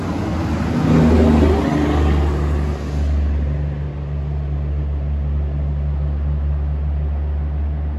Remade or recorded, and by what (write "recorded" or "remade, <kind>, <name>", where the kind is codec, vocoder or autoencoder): recorded